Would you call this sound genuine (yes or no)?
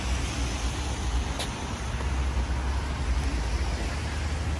yes